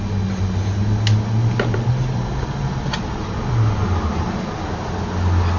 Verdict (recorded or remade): recorded